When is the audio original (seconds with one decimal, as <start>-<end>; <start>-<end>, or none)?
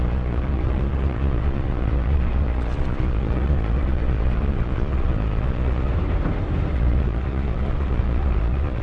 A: 5.9-6.7